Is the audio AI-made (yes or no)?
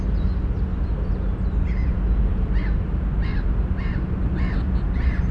no